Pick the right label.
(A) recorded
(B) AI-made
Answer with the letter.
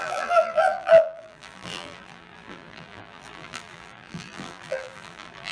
B